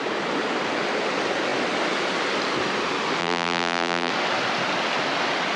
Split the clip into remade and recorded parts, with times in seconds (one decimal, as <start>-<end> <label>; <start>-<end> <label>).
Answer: 0.0-3.2 recorded; 3.2-4.1 remade; 4.1-5.6 recorded